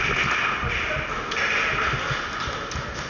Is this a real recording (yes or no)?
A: yes